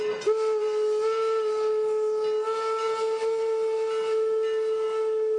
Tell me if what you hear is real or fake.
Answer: real